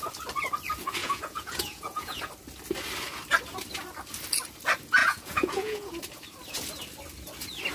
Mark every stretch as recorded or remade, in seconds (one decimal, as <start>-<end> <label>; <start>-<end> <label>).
0.0-1.0 recorded; 1.0-2.3 remade; 2.3-5.0 recorded; 5.0-5.9 remade; 5.9-7.7 recorded